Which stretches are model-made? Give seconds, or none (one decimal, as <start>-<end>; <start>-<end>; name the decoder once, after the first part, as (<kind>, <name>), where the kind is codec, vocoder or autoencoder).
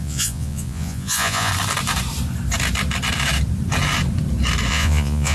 0.0-1.5 (vocoder, Vocos); 4.7-5.3